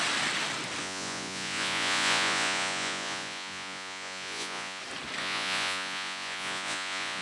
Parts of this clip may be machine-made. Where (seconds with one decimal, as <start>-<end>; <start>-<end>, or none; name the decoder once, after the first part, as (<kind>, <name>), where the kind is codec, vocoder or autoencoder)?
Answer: 0.8-4.8 (vocoder, Vocos); 5.2-7.2

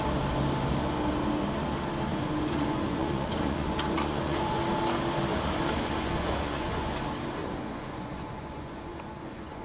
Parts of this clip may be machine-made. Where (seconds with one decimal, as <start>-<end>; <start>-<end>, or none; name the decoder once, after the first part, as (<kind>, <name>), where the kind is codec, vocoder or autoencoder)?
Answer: 2.1-4.6 (vocoder, Vocos); 5.3-6.9; 7.4-9.6

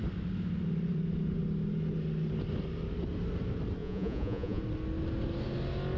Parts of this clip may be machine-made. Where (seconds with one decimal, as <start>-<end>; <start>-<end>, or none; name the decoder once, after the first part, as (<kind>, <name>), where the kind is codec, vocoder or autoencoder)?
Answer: 3.8-4.6 (vocoder, Vocos)

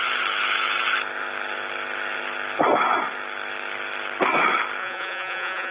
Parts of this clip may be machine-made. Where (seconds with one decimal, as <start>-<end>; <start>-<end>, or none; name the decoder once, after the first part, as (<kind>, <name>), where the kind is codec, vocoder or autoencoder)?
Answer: 4.8-5.7 (vocoder, Vocos)

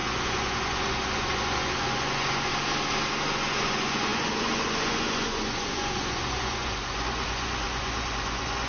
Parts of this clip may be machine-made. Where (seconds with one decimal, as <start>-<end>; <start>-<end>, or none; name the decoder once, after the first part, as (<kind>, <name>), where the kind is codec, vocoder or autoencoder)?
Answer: 0.0-2.5 (vocoder, Vocos); 3.3-8.7